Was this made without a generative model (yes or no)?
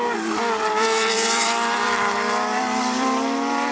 no